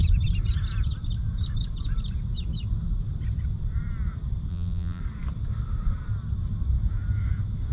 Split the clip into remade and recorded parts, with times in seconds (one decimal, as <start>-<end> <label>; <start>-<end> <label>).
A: 0.0-4.5 recorded; 4.5-5.0 remade; 5.0-7.7 recorded

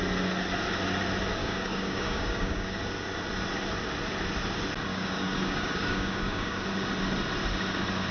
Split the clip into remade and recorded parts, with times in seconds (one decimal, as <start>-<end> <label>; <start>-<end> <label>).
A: 0.0-1.4 recorded; 1.4-2.8 remade; 2.8-4.9 recorded; 4.9-6.6 remade; 6.6-8.1 recorded

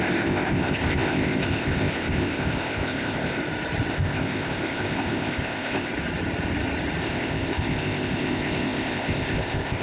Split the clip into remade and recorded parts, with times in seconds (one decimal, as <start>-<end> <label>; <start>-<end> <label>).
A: 0.0-3.4 remade; 3.4-3.9 recorded; 3.9-5.9 remade; 5.9-7.0 recorded; 7.0-9.8 remade

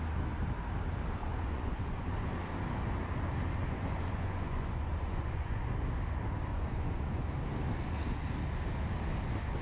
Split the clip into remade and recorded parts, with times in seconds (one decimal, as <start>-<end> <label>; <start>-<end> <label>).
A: 0.0-1.2 recorded; 1.2-2.4 remade; 2.4-3.6 recorded; 3.6-5.6 remade; 5.6-6.5 recorded; 6.5-7.3 remade; 7.3-9.6 recorded

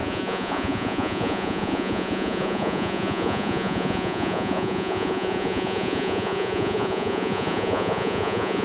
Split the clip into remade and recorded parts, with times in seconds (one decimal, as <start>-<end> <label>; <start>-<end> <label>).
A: 0.0-8.6 remade